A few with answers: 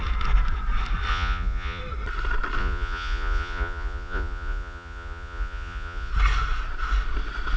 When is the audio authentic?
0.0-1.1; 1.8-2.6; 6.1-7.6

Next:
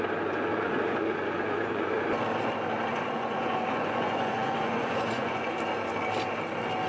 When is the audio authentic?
0.0-0.5; 2.0-2.9; 5.5-6.9

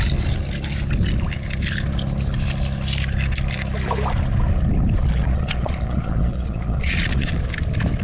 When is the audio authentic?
0.0-5.0; 7.3-8.0

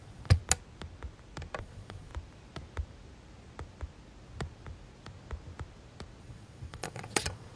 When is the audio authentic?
0.4-1.6; 2.1-6.2

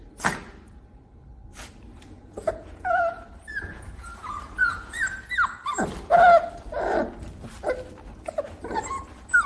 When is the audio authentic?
0.0-1.9; 5.0-9.5

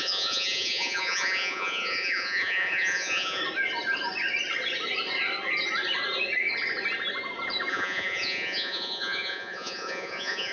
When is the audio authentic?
3.4-7.7